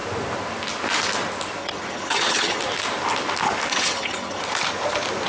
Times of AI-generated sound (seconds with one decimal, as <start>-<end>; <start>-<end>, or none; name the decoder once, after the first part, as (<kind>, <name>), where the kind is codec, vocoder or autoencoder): 1.6-2.6 (vocoder, HiFi-GAN); 3.7-4.4